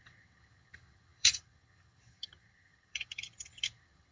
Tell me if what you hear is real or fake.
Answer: fake